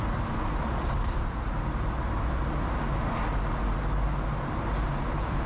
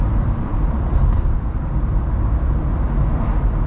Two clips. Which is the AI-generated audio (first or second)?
second